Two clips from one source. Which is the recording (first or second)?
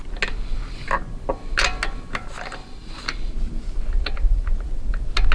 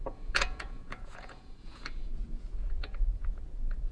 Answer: first